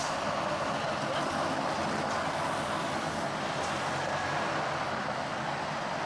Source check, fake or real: real